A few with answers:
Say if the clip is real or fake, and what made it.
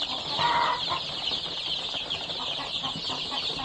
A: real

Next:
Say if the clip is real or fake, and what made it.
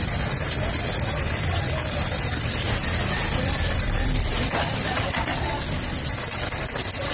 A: real